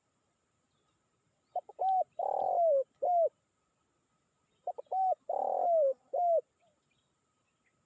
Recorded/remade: recorded